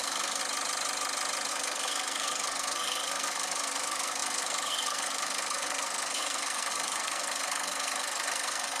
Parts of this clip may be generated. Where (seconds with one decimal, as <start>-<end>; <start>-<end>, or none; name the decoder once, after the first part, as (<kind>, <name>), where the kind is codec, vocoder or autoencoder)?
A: 0.0-0.4 (codec, SNAC); 1.5-8.8